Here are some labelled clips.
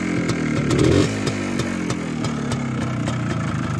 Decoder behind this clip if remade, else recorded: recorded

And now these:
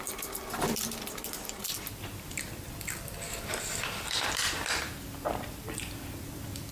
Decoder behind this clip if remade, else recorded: remade, vocoder, BigVGAN v2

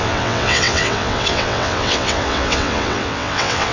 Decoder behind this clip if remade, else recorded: remade, vocoder, WaveNeXt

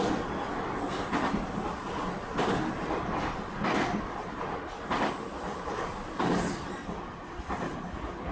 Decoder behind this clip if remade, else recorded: recorded